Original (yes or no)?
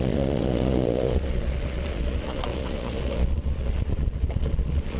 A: no